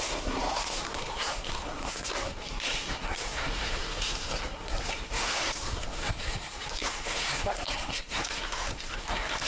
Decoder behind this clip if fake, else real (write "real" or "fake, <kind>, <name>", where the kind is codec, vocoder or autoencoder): fake, codec, SNAC